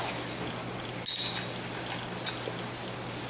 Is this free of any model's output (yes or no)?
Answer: yes